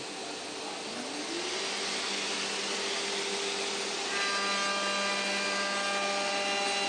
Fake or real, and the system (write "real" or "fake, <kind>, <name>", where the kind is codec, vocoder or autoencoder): real